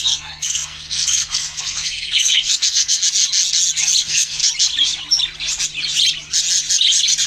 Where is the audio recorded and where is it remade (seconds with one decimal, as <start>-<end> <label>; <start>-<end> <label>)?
0.0-3.0 remade; 3.0-4.0 recorded; 4.0-4.4 remade; 4.4-7.3 recorded